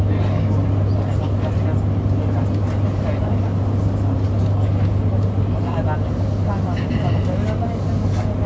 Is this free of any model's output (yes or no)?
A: yes